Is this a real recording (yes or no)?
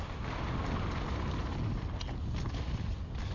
yes